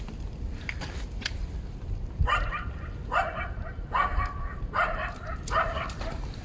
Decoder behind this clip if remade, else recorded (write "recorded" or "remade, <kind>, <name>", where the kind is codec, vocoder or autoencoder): recorded